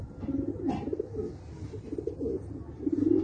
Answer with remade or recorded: recorded